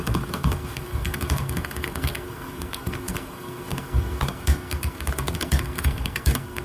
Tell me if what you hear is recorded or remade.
remade